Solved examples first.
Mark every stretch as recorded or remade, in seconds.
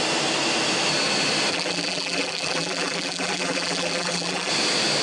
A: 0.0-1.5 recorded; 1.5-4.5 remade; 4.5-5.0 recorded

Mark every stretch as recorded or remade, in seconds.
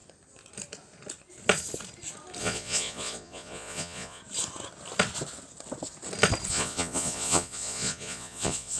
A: 0.0-2.4 recorded; 2.4-4.2 remade; 4.2-6.5 recorded; 6.5-8.8 remade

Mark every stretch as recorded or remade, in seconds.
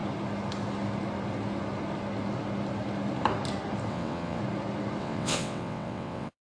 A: 0.0-3.9 recorded; 3.9-4.4 remade; 4.4-5.0 recorded; 5.0-6.5 remade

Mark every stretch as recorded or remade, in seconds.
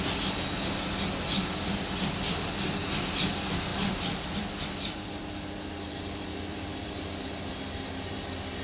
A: 0.0-3.7 recorded; 3.7-7.9 remade; 7.9-8.6 recorded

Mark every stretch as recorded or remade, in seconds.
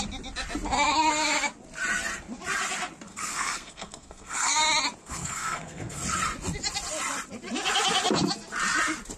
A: 0.0-3.1 recorded; 3.1-4.6 remade; 4.6-5.0 recorded; 5.0-6.0 remade; 6.0-9.2 recorded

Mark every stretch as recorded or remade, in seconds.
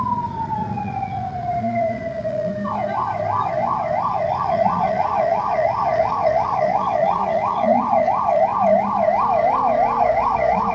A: 0.0-2.5 remade; 2.5-4.3 recorded; 4.3-8.5 remade; 8.5-10.0 recorded; 10.0-10.7 remade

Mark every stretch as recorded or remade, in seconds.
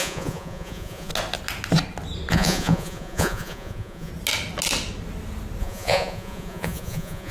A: 0.0-1.1 remade; 1.1-2.3 recorded; 2.3-4.1 remade; 4.1-5.6 recorded; 5.6-7.3 remade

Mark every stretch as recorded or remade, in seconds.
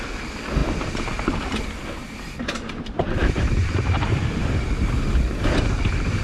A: 0.0-2.0 recorded; 2.0-5.4 remade; 5.4-6.2 recorded